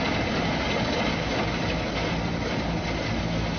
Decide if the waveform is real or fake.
real